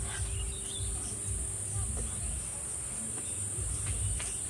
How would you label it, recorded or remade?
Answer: recorded